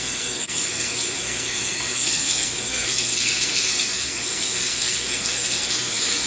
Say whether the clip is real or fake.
fake